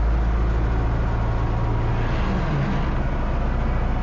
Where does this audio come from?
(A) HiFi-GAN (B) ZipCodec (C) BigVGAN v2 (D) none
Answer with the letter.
D